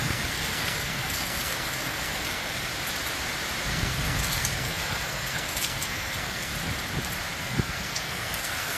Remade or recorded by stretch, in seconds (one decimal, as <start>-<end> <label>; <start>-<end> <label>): 0.0-2.7 remade; 2.7-3.7 recorded; 3.7-6.5 remade; 6.5-7.4 recorded; 7.4-8.8 remade